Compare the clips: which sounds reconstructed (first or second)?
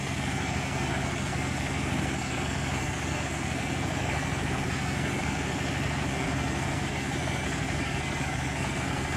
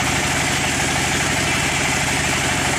first